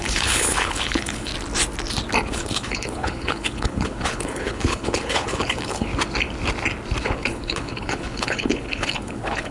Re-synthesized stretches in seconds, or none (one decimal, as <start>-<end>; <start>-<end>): 0.0-1.3; 2.3-5.9; 7.0-9.5